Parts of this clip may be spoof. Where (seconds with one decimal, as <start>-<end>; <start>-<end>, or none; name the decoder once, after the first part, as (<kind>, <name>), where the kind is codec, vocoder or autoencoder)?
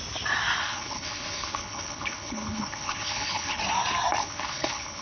0.6-3.6 (codec, HILCodec); 4.2-5.0